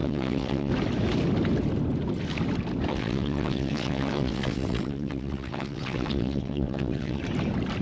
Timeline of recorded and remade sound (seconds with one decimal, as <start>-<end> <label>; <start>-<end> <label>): 0.0-0.7 remade; 0.7-2.9 recorded; 2.9-7.2 remade; 7.2-7.8 recorded